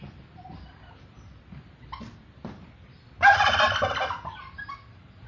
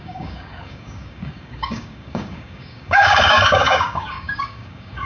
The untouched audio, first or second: first